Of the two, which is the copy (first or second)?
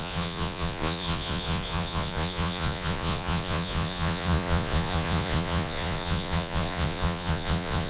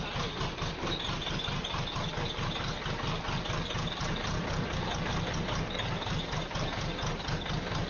first